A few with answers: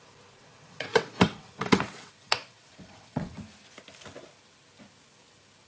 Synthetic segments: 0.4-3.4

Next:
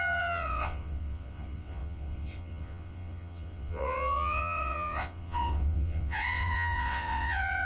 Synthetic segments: 0.0-7.7

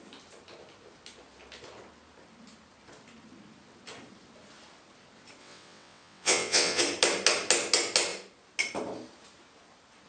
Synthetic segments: 5.4-6.8

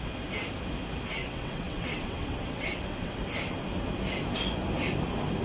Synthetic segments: 1.2-3.2

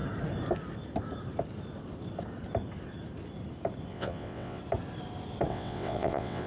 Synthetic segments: 3.9-4.6; 5.5-6.5

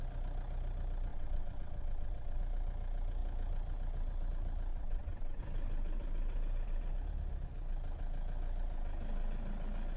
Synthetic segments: 1.1-2.4; 4.7-5.4

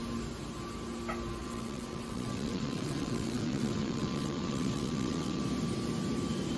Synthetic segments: 1.4-5.4